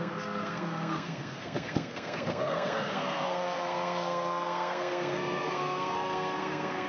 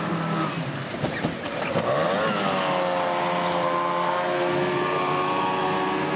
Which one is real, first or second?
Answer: second